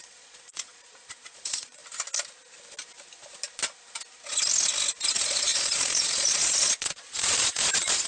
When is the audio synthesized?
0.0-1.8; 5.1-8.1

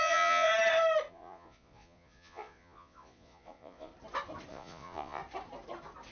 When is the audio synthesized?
0.0-0.5; 1.1-3.9; 4.5-5.2